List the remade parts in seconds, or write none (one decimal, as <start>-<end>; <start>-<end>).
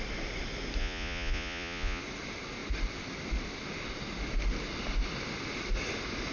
0.8-2.0